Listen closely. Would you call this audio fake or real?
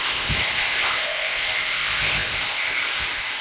fake